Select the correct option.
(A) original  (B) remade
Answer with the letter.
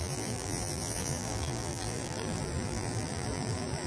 B